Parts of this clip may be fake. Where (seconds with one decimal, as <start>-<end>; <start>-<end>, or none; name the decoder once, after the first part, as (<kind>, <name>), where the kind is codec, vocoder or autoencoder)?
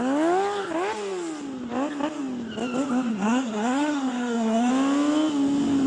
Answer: 3.1-4.7 (codec, SNAC)